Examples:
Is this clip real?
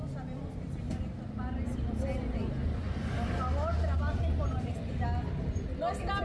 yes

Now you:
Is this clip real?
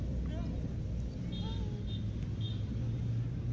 yes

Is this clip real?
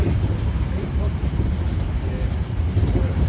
no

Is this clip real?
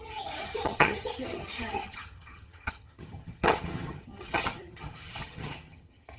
no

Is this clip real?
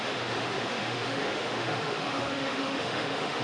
no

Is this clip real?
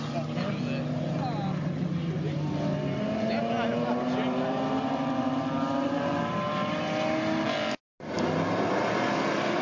yes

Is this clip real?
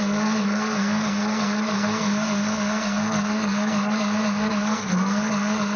no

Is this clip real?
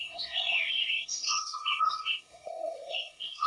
no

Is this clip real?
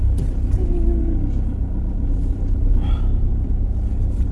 yes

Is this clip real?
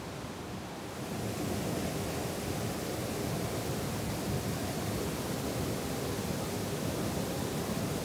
yes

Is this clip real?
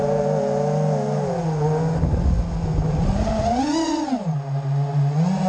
yes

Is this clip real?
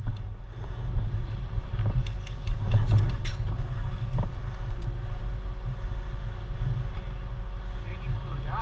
yes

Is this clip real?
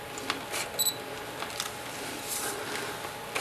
yes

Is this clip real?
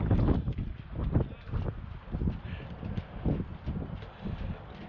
yes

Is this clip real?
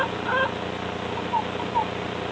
yes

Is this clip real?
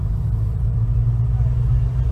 yes